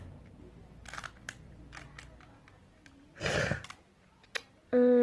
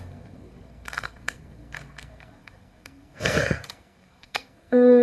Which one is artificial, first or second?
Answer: second